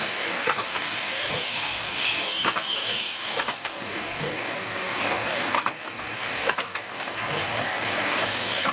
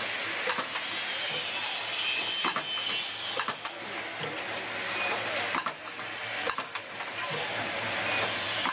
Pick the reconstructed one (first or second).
first